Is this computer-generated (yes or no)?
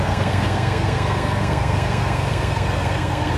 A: yes